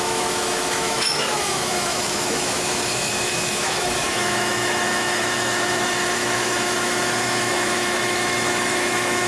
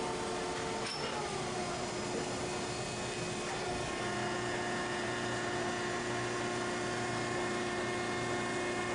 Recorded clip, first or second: second